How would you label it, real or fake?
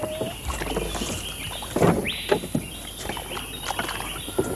real